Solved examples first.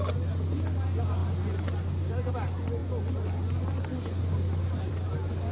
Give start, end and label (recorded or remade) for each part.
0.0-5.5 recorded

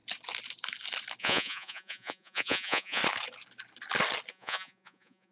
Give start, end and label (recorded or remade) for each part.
0.0-1.2 recorded; 1.2-3.0 remade; 3.0-4.3 recorded; 4.3-5.3 remade

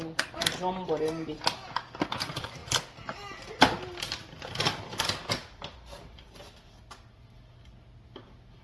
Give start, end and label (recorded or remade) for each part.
0.0-8.6 recorded

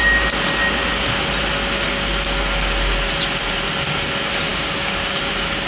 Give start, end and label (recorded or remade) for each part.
0.0-4.5 recorded; 4.5-5.2 remade; 5.2-5.7 recorded

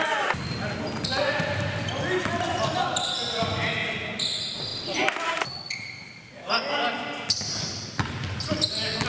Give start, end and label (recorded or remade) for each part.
0.0-9.1 recorded